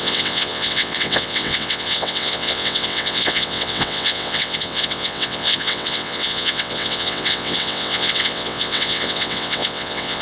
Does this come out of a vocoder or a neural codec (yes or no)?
yes